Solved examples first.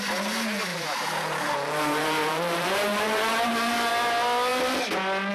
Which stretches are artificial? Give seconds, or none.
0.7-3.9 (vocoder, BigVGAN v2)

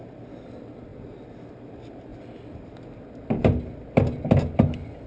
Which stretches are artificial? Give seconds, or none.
0.9-1.6 (vocoder, BigVGAN v2)

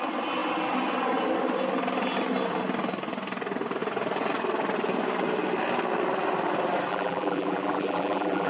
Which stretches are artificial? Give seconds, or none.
6.9-8.5 (vocoder, BigVGAN v2)